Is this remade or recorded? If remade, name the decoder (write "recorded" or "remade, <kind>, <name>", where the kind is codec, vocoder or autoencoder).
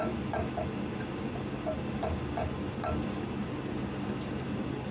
recorded